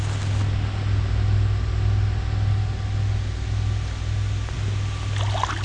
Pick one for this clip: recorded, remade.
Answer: recorded